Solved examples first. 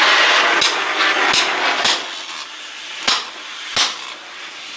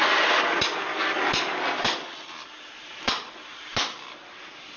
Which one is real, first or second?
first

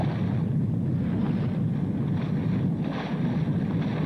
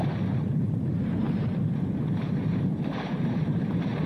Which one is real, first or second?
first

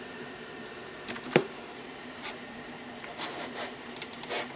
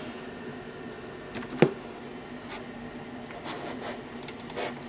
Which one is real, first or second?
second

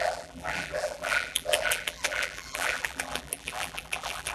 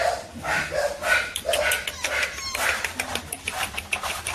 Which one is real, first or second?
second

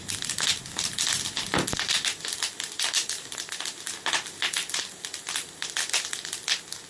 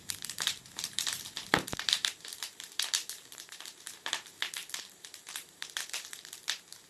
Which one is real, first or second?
first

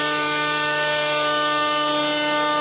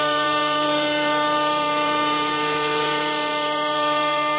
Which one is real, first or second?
first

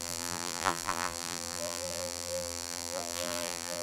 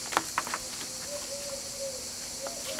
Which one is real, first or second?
second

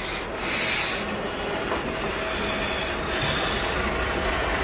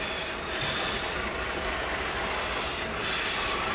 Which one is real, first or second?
first